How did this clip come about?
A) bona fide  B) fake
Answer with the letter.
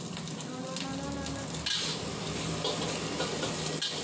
A